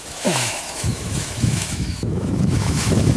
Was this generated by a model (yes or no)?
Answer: yes